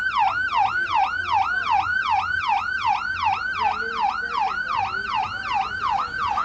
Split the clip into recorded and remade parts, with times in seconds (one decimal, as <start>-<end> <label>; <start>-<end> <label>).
0.0-6.4 recorded